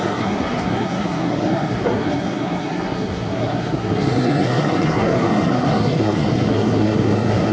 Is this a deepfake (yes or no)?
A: yes